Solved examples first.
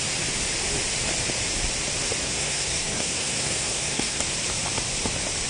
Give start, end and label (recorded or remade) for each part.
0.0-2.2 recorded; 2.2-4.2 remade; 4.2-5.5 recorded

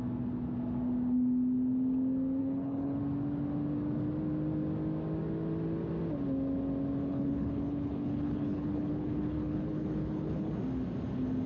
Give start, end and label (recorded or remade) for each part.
0.0-2.4 recorded; 2.4-3.0 remade; 3.0-7.0 recorded; 7.0-10.5 remade; 10.5-11.5 recorded

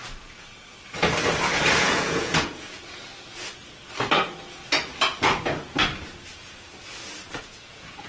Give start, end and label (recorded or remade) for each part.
0.0-1.8 recorded; 1.8-3.1 remade; 3.1-7.4 recorded; 7.4-8.1 remade

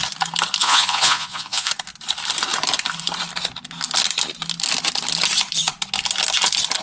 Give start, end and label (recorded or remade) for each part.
0.0-0.6 recorded; 0.6-1.7 remade; 1.7-6.8 recorded

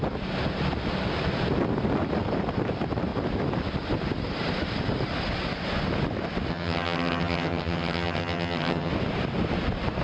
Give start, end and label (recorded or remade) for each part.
0.0-6.5 recorded; 6.5-8.9 remade; 8.9-10.0 recorded

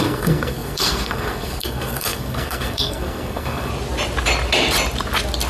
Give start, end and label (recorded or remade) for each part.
0.0-3.7 remade; 3.7-5.5 recorded

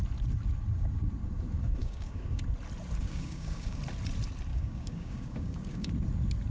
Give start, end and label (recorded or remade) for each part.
0.0-1.8 recorded; 1.8-2.4 remade; 2.4-3.0 recorded; 3.0-3.8 remade; 3.8-4.5 recorded; 4.5-5.9 remade; 5.9-6.5 recorded